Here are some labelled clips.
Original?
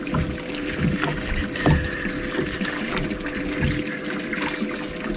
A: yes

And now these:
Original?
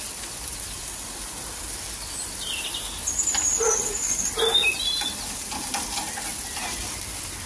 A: yes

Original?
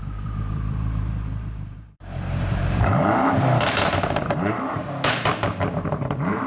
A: no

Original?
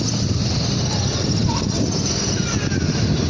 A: yes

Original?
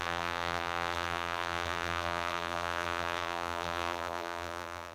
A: no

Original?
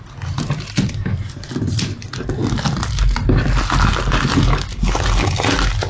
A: yes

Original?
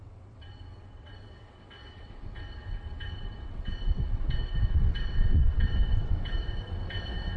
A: no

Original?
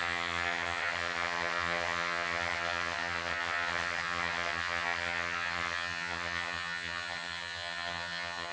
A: no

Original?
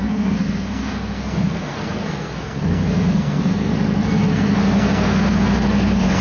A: no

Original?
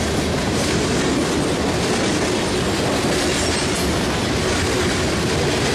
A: yes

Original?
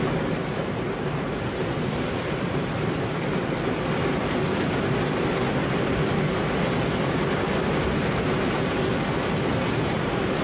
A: yes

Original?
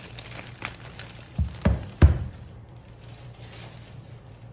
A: no